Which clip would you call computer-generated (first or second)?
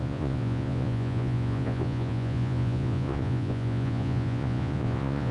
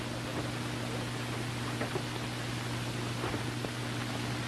first